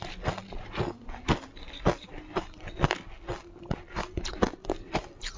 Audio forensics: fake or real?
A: real